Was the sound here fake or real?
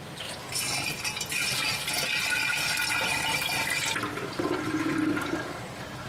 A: real